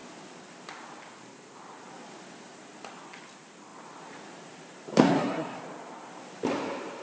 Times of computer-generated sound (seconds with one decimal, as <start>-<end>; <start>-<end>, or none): 4.9-5.6

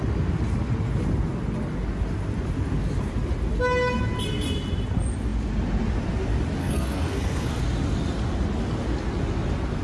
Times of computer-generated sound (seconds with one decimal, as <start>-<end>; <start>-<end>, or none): 6.6-7.6

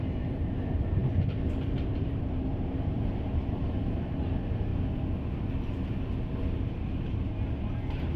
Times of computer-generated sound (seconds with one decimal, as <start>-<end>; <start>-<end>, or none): 0.0-1.0; 1.7-4.7; 6.4-8.2

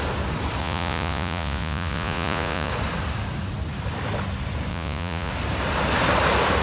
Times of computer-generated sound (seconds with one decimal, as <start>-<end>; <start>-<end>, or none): 0.6-2.7; 4.7-5.3

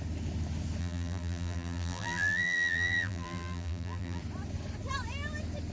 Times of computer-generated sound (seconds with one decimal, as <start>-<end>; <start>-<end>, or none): 0.8-4.2

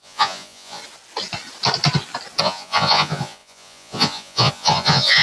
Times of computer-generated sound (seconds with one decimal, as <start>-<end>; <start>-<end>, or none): 0.0-0.8; 2.4-5.2